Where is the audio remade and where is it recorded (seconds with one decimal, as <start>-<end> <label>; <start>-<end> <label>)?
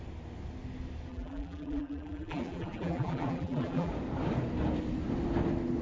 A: 0.0-1.1 recorded; 1.1-3.9 remade; 3.9-5.8 recorded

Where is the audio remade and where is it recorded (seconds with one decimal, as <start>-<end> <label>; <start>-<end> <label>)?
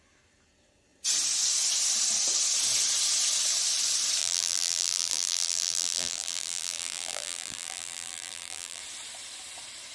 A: 0.0-4.2 recorded; 4.2-8.8 remade; 8.8-9.9 recorded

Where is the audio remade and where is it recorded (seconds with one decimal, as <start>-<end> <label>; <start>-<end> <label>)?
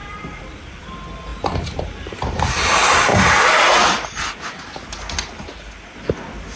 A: 0.0-0.8 remade; 0.8-1.3 recorded; 1.3-2.0 remade; 2.0-3.1 recorded; 3.1-4.6 remade; 4.6-6.6 recorded